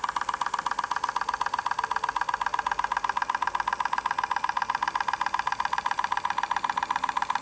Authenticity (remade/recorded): recorded